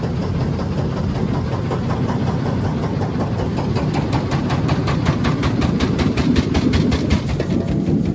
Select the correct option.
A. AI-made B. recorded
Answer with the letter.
B